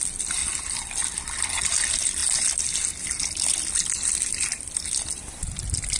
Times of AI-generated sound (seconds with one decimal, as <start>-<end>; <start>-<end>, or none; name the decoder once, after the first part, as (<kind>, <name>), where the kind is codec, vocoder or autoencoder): none